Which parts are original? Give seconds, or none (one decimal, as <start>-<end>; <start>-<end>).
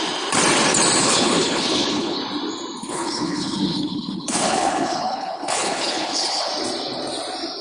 0.0-1.0; 2.2-2.8; 6.5-7.6